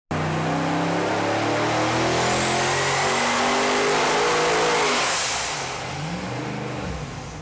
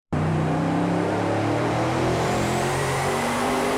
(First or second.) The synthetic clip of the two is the second